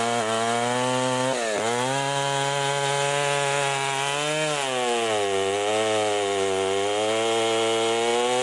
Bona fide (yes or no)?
yes